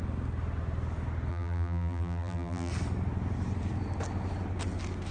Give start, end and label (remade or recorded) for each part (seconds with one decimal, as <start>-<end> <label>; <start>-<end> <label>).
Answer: 0.0-1.3 recorded; 1.3-2.7 remade; 2.7-5.1 recorded